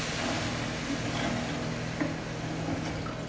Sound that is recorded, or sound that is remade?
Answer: recorded